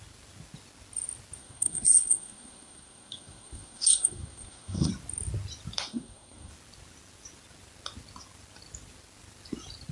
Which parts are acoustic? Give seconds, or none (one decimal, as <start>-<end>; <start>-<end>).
0.0-1.4; 4.9-5.9; 6.5-9.9